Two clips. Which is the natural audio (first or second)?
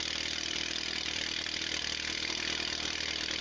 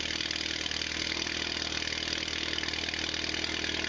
second